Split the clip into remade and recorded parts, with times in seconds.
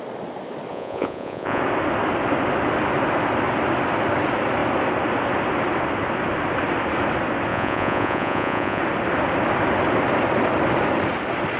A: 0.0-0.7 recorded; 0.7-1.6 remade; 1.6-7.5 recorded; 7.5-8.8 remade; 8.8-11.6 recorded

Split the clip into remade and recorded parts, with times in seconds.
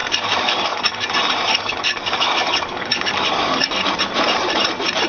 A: 0.0-1.1 remade; 1.1-1.5 recorded; 1.5-3.8 remade; 3.8-5.1 recorded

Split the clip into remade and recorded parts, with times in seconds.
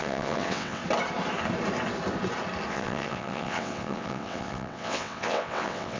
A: 0.0-0.8 remade; 0.8-2.7 recorded; 2.7-6.0 remade